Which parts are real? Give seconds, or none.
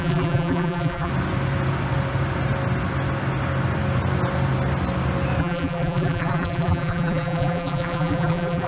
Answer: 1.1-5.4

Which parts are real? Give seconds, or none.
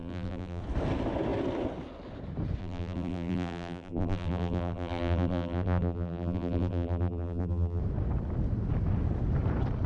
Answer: 0.6-2.6; 7.8-9.9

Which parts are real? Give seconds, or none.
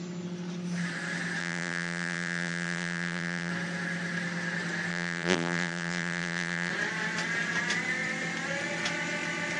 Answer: 0.0-1.4; 3.5-4.9; 6.7-9.6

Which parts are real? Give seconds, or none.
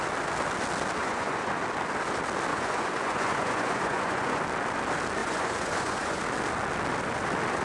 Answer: 0.0-1.0; 1.5-2.5; 4.4-5.2; 6.2-7.6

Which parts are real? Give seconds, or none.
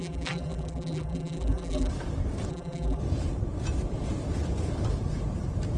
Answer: 1.9-2.5; 3.0-5.8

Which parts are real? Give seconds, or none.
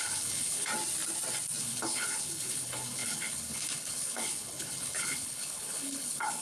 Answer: 0.7-1.6